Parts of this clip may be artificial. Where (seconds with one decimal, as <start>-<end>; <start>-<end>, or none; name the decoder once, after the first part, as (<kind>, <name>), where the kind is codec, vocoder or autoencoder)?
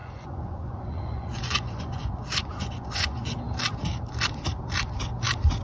0.0-3.4 (vocoder, Vocos)